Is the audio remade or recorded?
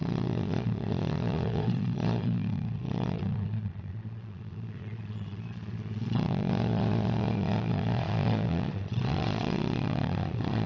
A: remade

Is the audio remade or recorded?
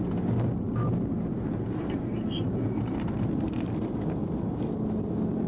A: recorded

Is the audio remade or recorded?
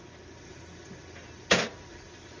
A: recorded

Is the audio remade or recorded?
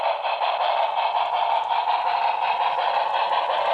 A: recorded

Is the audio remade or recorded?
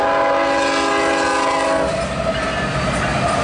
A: recorded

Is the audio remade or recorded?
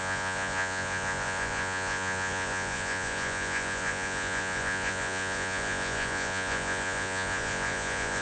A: remade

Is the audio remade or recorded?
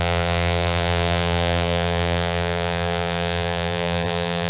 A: remade